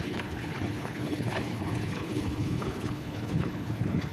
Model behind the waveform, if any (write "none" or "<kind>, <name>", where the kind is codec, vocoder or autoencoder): codec, HILCodec